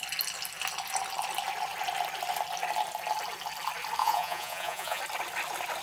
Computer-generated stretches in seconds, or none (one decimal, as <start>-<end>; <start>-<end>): 4.0-5.0